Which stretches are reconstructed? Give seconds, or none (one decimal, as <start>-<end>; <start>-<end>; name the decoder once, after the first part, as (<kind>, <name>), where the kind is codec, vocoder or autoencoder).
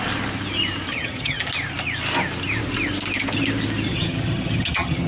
0.9-1.4 (vocoder, HiFi-GAN); 3.9-5.1